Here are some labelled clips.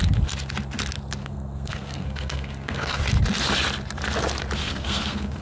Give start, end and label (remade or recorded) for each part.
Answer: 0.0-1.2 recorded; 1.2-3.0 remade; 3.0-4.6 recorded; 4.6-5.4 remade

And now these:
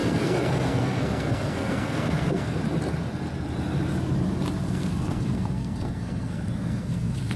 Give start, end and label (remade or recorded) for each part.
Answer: 0.0-2.6 remade; 2.6-4.6 recorded; 4.6-7.4 remade

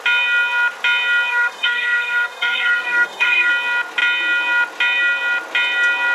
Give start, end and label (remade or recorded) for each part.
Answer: 0.0-1.3 recorded; 1.3-3.5 remade; 3.5-6.1 recorded

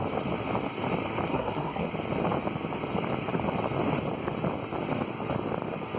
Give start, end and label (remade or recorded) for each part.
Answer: 0.0-1.3 recorded; 1.3-1.9 remade; 1.9-6.0 recorded

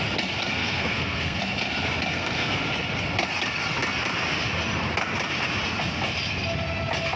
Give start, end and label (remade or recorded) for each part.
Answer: 0.0-0.6 recorded; 0.6-1.4 remade; 1.4-2.1 recorded; 2.1-2.6 remade; 2.6-7.2 recorded

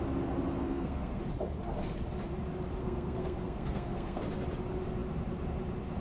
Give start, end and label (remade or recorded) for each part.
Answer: 0.0-0.6 recorded; 0.6-1.2 remade; 1.2-2.8 recorded; 2.8-4.2 remade; 4.2-6.0 recorded

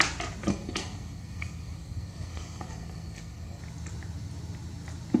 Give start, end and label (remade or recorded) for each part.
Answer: 0.0-0.5 recorded; 0.5-3.6 remade; 3.6-5.2 recorded

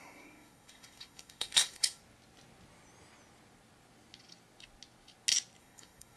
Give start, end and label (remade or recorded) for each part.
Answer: 0.0-2.0 remade; 2.0-5.6 recorded; 5.6-6.2 remade